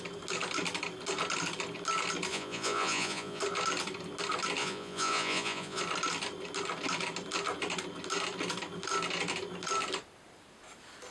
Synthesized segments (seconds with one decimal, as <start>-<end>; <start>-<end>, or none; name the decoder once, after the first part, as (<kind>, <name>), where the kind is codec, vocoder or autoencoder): 2.3-3.4 (vocoder, Vocos); 4.6-5.8